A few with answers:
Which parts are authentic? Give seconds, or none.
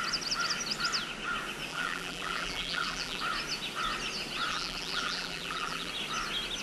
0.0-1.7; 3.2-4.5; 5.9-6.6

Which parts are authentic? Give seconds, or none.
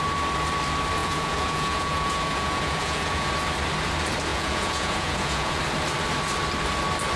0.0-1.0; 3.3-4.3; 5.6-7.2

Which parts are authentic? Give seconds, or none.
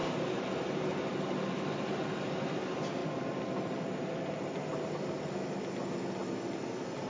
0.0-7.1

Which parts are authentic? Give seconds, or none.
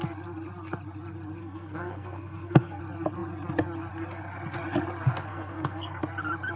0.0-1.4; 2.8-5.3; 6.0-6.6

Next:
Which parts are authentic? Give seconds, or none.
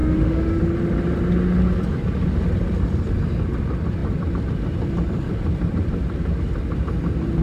0.6-7.4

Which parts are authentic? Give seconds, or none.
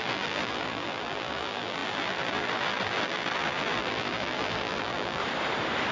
5.2-5.9